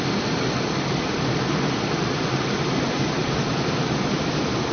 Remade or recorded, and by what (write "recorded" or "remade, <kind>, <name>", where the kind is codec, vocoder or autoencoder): recorded